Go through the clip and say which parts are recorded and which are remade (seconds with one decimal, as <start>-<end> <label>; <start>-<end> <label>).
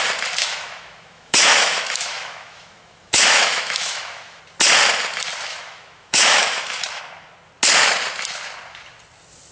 0.0-0.4 recorded; 0.4-4.4 remade; 4.4-5.5 recorded; 5.5-7.0 remade; 7.0-9.5 recorded